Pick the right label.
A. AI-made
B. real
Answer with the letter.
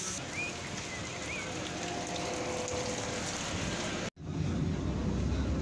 B